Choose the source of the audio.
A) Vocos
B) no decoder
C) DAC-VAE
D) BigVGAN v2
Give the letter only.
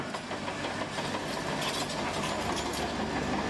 B